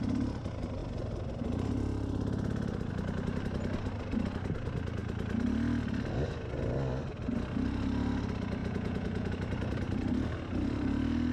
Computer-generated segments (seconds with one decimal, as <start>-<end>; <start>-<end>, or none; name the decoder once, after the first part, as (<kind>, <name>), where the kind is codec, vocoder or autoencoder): 8.6-9.3 (vocoder, Vocos)